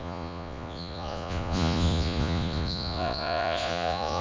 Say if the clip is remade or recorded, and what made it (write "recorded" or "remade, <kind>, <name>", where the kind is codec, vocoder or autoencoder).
remade, vocoder, Vocos